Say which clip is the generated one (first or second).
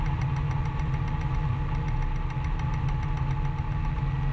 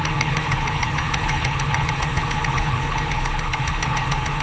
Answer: second